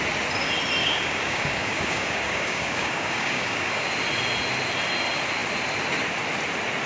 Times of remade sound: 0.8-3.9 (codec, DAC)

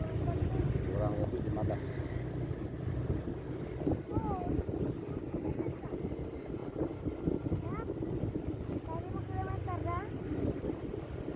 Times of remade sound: none

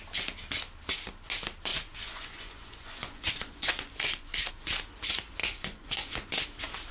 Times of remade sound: 1.7-4.5 (vocoder, Vocos); 5.4-6.3

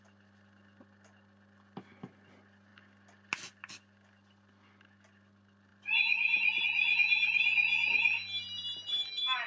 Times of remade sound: none

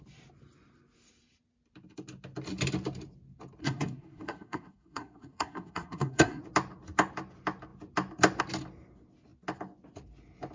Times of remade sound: 3.6-6.4 (codec, SNAC)

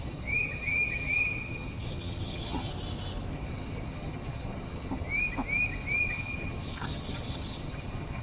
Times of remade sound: 0.0-2.7 (vocoder, HiFi-GAN); 3.3-5.1; 6.1-8.2

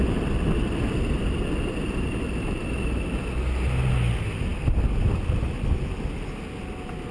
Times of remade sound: none

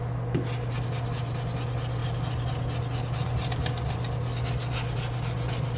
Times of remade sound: none